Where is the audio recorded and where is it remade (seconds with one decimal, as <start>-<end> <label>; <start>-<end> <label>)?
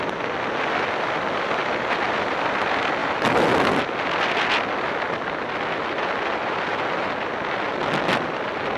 0.0-3.0 recorded; 3.0-3.5 remade; 3.5-8.8 recorded